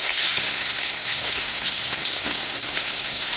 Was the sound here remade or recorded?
remade